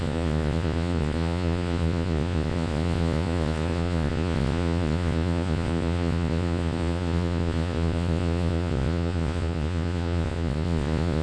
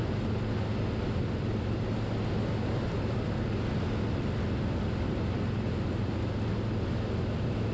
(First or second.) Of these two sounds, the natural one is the second